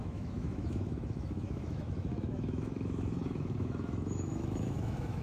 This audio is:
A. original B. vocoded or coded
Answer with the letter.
B